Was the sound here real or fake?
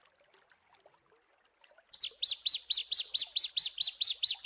real